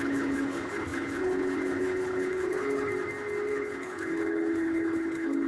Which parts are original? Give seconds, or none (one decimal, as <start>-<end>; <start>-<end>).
2.9-3.5